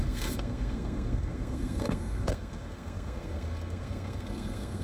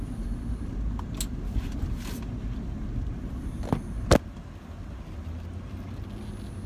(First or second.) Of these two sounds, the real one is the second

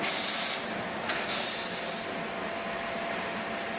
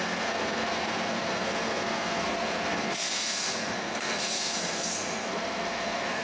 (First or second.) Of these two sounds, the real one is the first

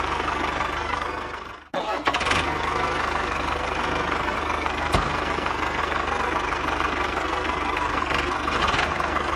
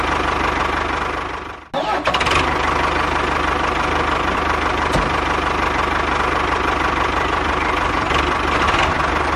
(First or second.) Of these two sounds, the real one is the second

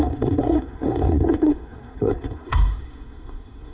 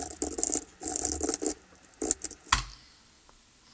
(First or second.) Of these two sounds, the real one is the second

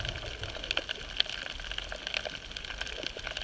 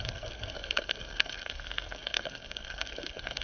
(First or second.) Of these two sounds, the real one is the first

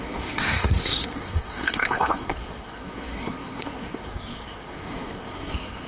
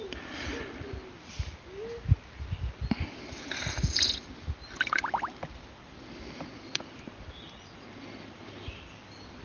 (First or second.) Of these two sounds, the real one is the second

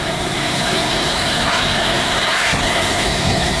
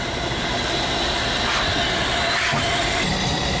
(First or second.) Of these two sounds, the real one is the second